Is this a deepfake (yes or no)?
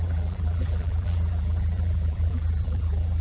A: yes